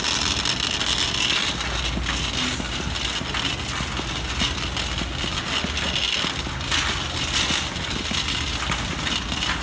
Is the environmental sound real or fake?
real